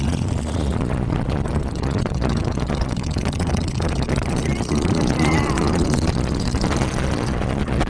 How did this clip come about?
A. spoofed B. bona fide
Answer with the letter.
A